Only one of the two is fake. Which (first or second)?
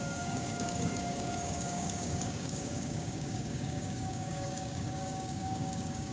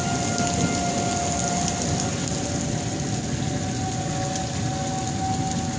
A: first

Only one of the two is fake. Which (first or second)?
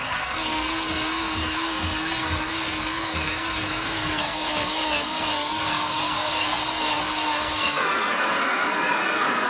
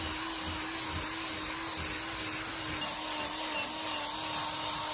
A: first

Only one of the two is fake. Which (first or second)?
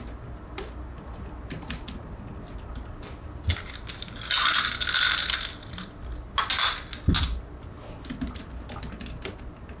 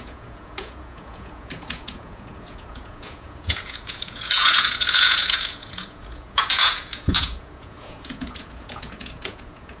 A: second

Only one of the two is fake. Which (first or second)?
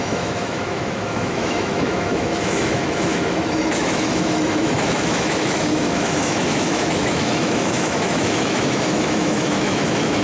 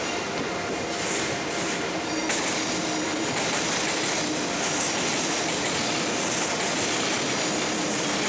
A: first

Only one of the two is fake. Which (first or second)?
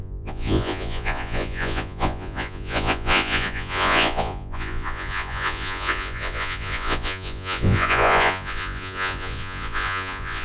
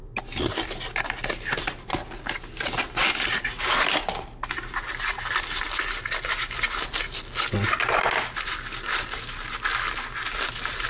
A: first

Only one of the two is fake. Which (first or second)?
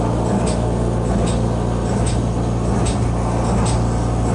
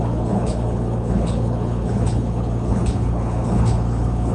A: second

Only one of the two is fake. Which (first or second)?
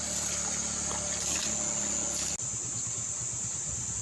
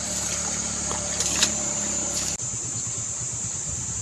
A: second